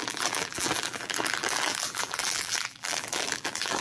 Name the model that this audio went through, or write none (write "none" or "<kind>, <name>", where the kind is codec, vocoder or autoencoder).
vocoder, BigVGAN v2